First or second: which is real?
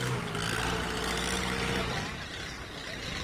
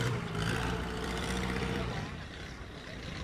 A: first